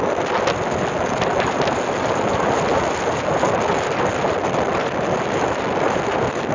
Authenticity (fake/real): fake